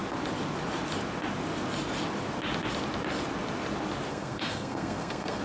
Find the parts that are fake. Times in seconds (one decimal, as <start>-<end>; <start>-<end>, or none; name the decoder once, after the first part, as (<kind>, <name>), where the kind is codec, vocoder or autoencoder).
4.1-5.4 (codec, SNAC)